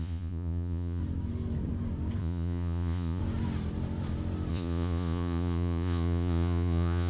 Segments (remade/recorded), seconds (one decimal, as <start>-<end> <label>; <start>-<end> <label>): 0.0-1.0 remade; 1.0-2.2 recorded; 2.2-3.2 remade; 3.2-4.5 recorded; 4.5-7.1 remade